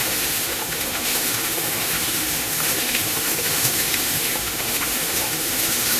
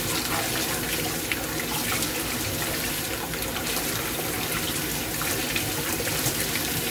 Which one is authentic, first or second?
second